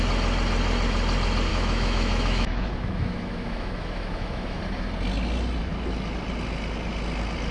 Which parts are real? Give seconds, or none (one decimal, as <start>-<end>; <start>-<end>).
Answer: 0.0-1.5; 4.6-7.5